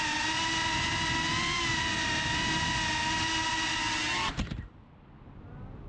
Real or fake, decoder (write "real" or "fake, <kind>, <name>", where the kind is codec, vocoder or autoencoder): real